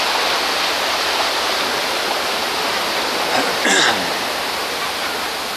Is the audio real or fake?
real